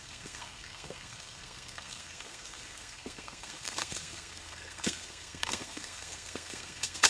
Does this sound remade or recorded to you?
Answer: remade